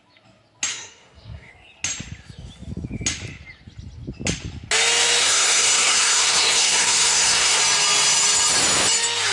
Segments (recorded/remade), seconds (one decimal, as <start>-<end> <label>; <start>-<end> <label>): 0.0-0.7 recorded; 0.7-1.5 remade; 1.5-5.2 recorded; 5.2-7.6 remade; 7.6-9.3 recorded